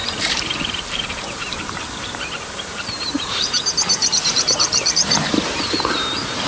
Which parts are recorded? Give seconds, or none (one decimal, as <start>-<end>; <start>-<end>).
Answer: 3.6-4.0